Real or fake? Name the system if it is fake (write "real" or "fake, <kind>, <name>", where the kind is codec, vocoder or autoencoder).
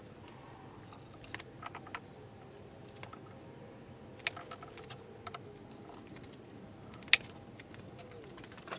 real